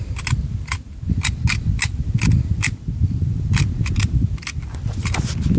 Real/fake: real